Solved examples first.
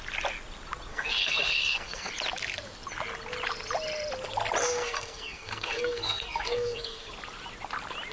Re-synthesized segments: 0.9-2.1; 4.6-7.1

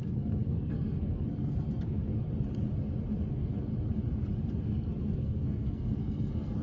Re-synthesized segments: 0.0-2.1; 3.3-3.7; 4.6-6.6

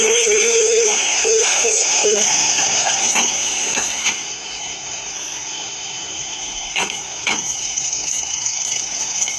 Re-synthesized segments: 0.0-9.4

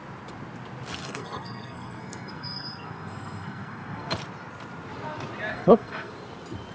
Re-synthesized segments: 1.0-4.1; 5.5-6.1

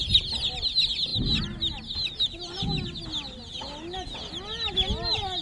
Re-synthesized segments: none

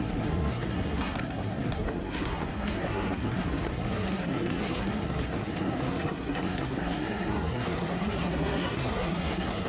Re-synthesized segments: 0.0-9.7

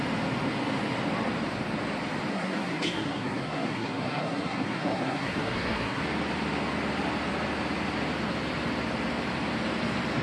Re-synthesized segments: 2.3-6.0

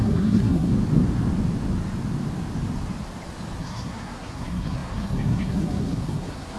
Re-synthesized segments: 0.0-0.7; 3.6-6.6